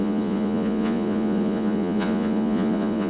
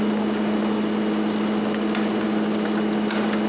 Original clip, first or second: second